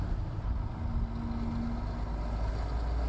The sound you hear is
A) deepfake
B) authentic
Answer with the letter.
B